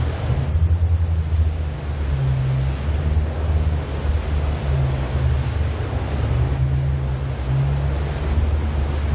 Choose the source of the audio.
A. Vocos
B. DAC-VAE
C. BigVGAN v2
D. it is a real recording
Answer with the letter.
D